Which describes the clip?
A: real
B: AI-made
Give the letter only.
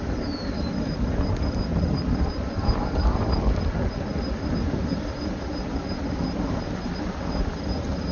A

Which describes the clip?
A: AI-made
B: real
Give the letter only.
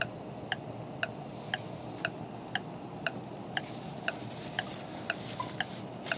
B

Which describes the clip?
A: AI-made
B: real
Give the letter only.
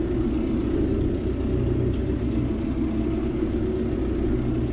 B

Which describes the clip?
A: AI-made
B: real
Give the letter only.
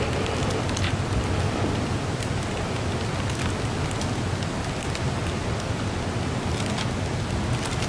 B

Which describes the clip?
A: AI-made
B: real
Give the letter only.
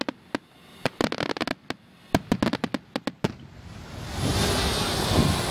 B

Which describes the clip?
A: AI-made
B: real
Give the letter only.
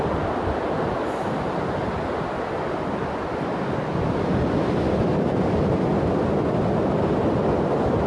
B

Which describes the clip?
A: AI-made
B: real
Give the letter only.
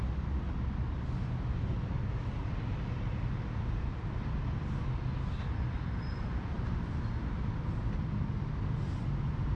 B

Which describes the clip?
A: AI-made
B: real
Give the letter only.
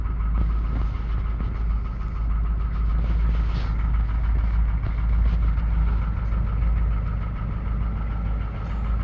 B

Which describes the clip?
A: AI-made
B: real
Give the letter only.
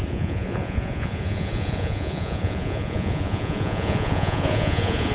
A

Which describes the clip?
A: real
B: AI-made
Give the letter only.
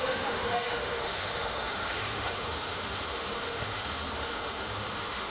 B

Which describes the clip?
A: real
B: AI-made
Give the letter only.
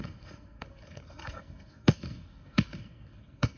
B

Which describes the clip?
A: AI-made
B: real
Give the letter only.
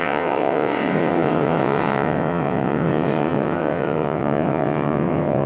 A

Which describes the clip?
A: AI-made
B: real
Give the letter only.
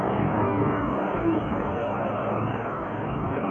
A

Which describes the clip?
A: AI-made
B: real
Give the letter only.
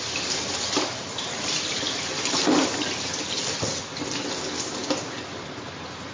B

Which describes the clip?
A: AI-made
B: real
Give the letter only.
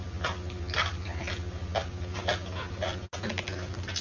B